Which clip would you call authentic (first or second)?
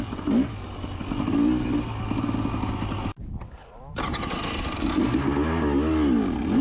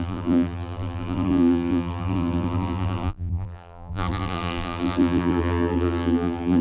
first